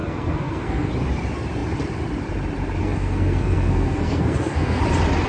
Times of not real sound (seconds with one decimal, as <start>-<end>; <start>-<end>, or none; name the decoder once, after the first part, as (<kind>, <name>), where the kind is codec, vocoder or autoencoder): 0.0-0.9 (codec, SNAC); 2.8-4.8